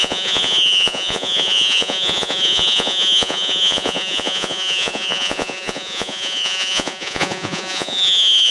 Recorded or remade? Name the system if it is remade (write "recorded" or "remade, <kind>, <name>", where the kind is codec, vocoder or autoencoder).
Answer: remade, vocoder, Vocos